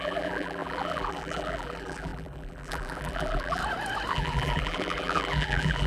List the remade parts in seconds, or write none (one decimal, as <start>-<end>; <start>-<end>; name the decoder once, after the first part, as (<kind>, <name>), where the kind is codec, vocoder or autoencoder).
0.0-3.6 (vocoder, BigVGAN v2); 4.1-5.9